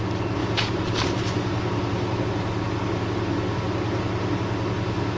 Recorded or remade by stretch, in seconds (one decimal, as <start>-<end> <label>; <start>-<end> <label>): 0.0-0.4 recorded; 0.4-2.2 remade; 2.2-5.2 recorded